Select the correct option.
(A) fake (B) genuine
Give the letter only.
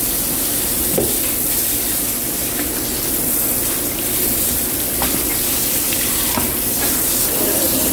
B